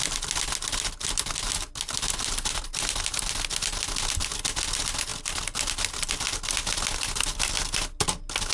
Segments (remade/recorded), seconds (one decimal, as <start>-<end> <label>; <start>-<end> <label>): 0.0-8.5 recorded